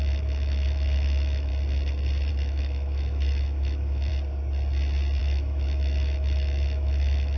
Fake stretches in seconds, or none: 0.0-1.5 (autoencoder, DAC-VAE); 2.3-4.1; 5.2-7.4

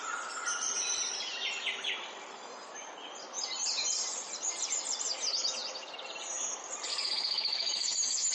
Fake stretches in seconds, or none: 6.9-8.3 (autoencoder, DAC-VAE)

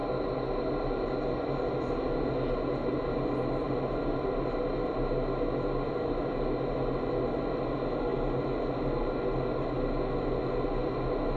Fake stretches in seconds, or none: none

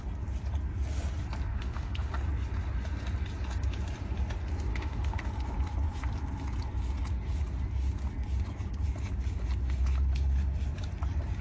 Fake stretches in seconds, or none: 1.5-2.1 (autoencoder, DAC-VAE); 4.7-5.3

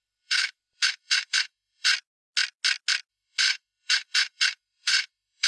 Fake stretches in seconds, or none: 0.0-1.9 (autoencoder, DAC-VAE); 3.1-5.5

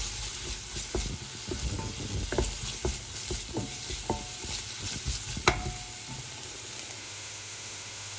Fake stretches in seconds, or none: 7.0-8.2 (autoencoder, DAC-VAE)

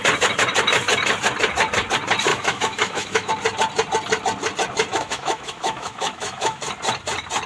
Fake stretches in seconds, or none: 2.3-3.3 (autoencoder, DAC-VAE); 4.9-6.6

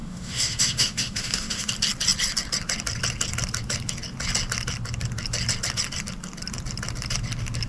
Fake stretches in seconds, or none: 0.0-1.7 (autoencoder, DAC-VAE)